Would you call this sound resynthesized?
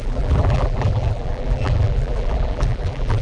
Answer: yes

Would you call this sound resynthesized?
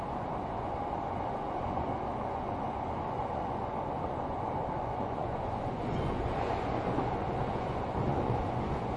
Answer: yes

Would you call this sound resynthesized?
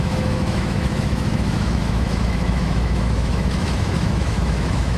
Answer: yes